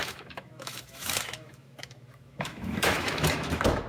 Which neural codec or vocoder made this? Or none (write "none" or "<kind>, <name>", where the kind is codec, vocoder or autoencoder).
autoencoder, DAC-VAE